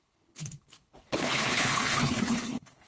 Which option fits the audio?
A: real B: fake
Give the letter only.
B